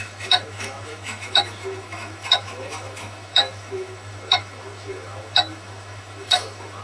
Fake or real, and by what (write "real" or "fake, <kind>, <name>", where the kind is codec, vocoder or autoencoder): fake, autoencoder, DAC-VAE